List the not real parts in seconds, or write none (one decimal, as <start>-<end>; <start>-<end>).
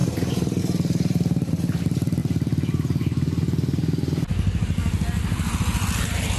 0.0-2.2; 6.0-6.4